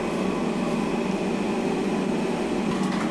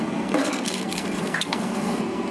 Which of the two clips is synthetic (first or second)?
second